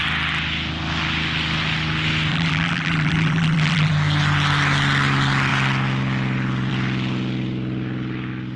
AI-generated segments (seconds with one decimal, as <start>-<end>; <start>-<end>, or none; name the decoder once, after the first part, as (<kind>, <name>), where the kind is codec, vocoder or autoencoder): 2.3-3.9 (vocoder, BigVGAN v2)